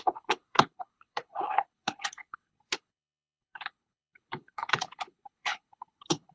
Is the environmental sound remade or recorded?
remade